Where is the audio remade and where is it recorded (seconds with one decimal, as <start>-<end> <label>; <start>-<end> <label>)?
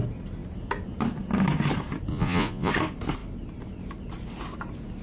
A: 0.0-2.1 recorded; 2.1-2.7 remade; 2.7-5.0 recorded